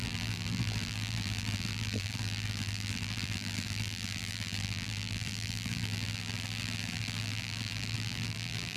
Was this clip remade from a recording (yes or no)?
yes